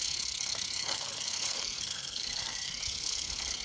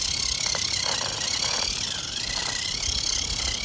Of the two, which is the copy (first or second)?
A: first